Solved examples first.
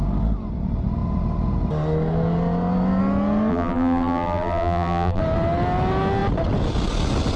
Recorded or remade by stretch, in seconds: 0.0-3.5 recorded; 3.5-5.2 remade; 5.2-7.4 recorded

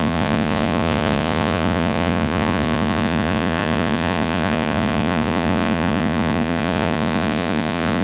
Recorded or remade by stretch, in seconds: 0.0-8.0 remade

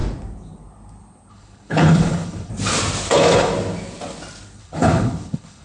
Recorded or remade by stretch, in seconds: 0.0-1.3 recorded; 1.3-2.5 remade; 2.5-3.1 recorded; 3.1-3.5 remade; 3.5-4.6 recorded; 4.6-5.6 remade

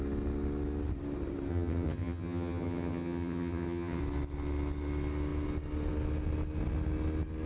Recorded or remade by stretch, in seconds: 0.0-1.5 recorded; 1.5-4.0 remade; 4.0-7.5 recorded